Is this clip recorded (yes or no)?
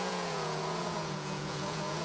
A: no